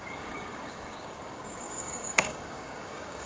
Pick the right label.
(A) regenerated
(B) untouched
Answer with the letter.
A